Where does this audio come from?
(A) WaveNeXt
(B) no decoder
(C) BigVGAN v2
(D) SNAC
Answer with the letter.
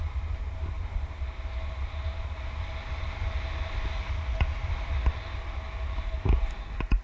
B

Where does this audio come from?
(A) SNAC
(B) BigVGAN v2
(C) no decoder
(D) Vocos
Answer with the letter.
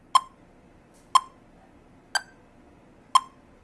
C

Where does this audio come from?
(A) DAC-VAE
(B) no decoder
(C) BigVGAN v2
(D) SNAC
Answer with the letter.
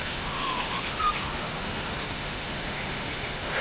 A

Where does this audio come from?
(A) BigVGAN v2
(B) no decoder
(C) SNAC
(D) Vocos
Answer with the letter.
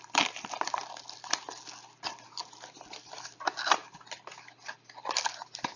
B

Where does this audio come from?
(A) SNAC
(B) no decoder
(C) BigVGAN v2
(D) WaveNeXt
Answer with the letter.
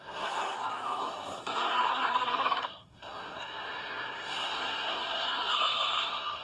A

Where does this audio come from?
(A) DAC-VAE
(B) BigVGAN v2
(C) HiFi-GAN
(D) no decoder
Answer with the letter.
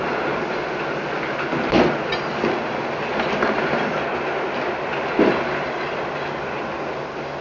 D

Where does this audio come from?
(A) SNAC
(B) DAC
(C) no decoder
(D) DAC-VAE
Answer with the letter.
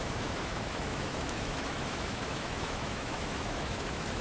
D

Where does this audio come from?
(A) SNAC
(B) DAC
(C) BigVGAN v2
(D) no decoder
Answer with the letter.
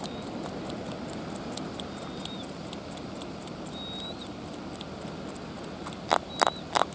D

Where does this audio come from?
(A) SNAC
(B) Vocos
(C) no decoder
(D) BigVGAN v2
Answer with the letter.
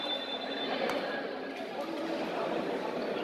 C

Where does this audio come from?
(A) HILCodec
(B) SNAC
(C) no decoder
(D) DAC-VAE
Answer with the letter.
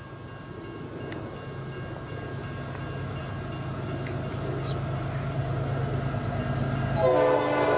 C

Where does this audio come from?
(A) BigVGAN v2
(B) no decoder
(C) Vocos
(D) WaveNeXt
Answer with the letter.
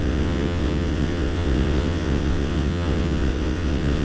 D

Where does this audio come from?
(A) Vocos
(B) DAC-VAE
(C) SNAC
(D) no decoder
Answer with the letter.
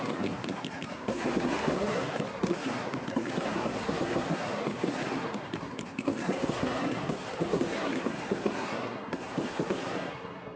C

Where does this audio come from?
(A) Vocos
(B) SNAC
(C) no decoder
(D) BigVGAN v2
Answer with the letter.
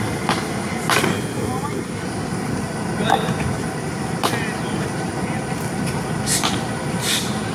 D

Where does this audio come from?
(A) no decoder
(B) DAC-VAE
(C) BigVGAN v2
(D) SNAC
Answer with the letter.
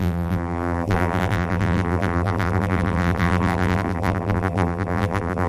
C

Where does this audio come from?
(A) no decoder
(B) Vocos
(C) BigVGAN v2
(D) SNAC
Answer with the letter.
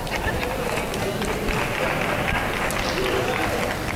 A